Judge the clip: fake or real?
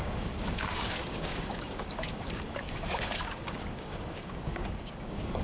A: fake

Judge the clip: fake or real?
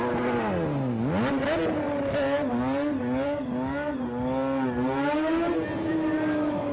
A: real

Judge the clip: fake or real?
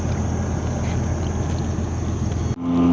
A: real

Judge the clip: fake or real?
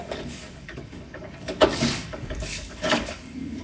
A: fake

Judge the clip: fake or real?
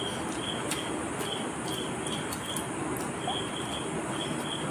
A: real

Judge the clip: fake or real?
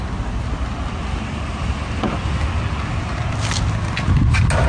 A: real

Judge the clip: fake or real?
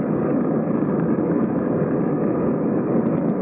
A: fake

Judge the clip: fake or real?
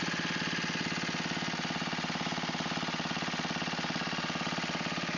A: real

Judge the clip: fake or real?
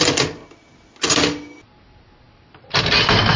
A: real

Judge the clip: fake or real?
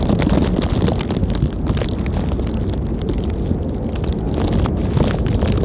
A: real